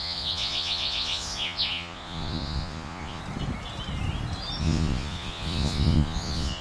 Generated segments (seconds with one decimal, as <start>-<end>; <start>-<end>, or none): 0.0-3.2; 4.6-6.6